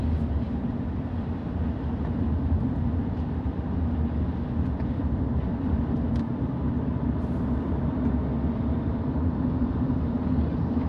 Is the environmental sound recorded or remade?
remade